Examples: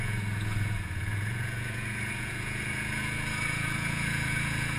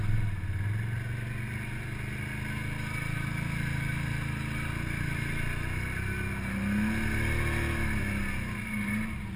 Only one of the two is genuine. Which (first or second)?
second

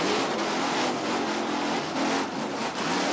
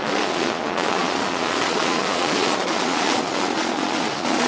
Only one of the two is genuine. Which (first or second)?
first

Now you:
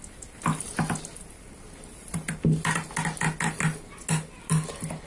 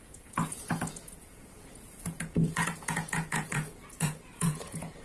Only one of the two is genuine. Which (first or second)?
first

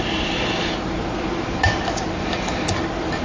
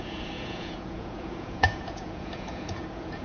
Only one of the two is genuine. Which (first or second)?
first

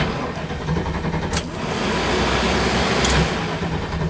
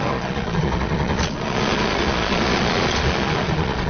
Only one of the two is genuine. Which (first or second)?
first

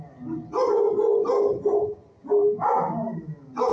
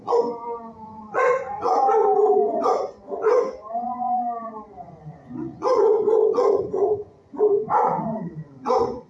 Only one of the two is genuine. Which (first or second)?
first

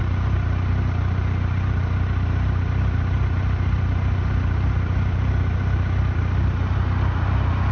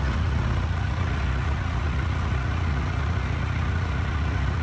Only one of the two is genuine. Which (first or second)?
first